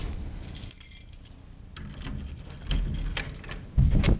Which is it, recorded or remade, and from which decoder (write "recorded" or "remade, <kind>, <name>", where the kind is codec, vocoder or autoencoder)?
recorded